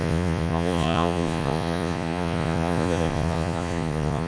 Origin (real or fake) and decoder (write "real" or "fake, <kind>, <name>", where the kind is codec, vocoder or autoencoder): fake, vocoder, Vocos